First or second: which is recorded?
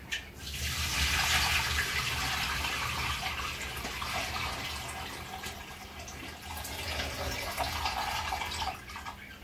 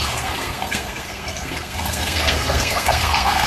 first